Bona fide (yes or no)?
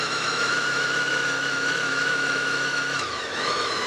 no